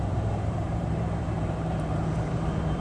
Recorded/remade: remade